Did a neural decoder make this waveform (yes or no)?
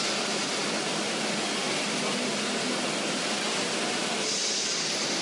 no